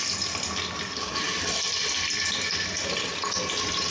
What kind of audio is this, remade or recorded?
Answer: recorded